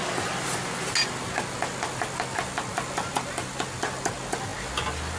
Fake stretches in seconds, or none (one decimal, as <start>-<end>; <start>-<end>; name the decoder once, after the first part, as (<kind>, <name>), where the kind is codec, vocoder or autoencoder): none